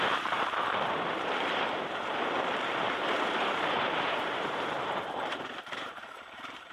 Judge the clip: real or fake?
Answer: fake